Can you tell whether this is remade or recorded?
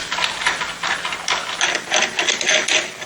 recorded